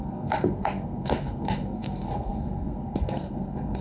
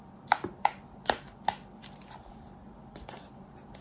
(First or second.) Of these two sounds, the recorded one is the second